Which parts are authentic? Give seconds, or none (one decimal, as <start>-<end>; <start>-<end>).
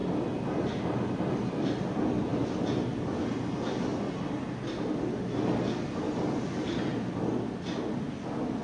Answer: 1.2-8.6